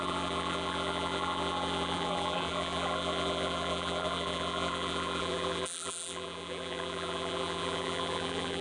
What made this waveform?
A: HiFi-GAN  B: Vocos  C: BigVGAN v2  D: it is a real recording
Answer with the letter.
C